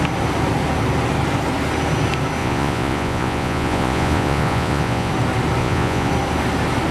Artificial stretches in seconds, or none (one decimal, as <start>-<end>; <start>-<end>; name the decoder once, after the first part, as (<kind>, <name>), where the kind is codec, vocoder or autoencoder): 2.4-5.1 (vocoder, Vocos); 5.6-6.1